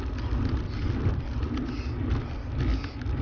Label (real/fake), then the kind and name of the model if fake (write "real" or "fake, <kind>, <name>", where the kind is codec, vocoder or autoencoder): real